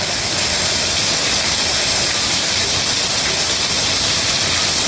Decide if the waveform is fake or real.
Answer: real